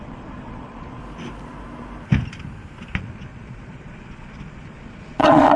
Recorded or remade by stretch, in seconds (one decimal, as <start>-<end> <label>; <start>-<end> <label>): 0.0-1.0 remade; 1.0-3.0 recorded; 3.0-5.6 remade